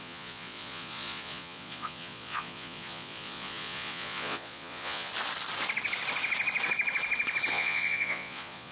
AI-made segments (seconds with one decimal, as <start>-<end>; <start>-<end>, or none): 0.0-5.1; 7.5-8.7